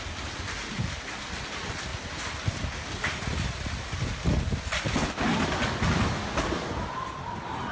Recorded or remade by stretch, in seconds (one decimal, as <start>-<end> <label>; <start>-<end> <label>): 0.0-7.7 recorded

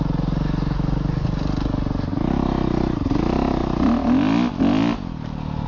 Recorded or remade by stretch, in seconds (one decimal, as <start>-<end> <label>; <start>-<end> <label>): 0.0-5.7 recorded

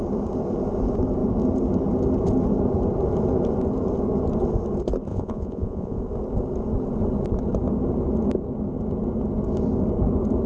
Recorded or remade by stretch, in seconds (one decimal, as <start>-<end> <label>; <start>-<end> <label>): 0.0-5.1 recorded; 5.1-6.0 remade; 6.0-10.5 recorded

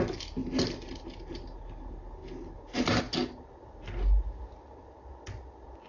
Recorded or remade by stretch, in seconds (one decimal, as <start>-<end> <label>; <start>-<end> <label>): 0.0-5.9 recorded

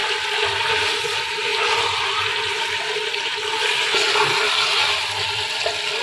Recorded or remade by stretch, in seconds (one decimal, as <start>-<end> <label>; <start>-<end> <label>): 0.0-6.0 recorded